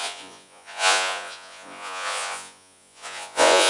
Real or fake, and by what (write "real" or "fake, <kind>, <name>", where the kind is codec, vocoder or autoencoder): fake, vocoder, Vocos